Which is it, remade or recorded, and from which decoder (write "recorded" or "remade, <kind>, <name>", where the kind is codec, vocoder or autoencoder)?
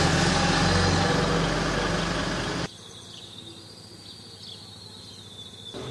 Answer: recorded